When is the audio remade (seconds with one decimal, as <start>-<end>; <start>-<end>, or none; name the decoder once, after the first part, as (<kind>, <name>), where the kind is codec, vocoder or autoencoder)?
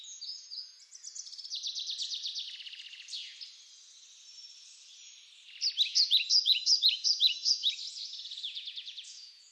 0.0-0.9 (vocoder, Vocos); 5.9-9.5